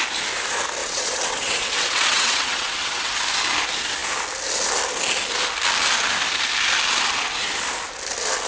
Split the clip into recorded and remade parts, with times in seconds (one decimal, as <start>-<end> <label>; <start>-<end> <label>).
0.0-0.8 recorded; 0.8-3.1 remade; 3.1-8.5 recorded